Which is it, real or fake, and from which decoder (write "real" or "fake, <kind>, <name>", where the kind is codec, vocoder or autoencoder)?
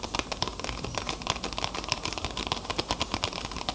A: real